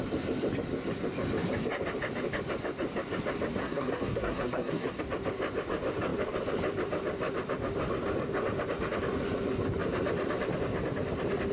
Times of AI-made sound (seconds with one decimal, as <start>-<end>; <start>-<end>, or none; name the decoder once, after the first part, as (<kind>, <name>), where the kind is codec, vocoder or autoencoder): 3.6-5.0 (codec, SNAC)